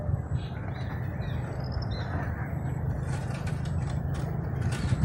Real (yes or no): yes